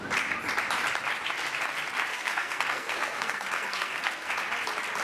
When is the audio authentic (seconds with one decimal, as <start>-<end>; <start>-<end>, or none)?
0.0-2.1; 4.3-5.0